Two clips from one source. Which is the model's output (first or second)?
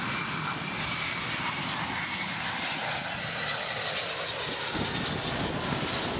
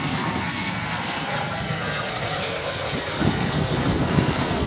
second